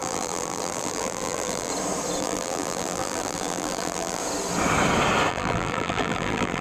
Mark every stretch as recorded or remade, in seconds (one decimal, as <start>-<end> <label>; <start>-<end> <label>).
0.0-1.7 remade; 1.7-2.2 recorded; 2.2-4.2 remade; 4.2-5.3 recorded; 5.3-6.6 remade